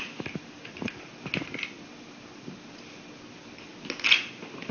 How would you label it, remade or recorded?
recorded